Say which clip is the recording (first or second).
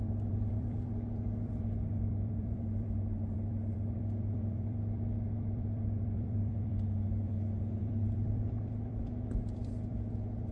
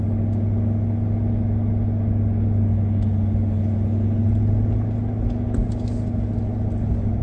second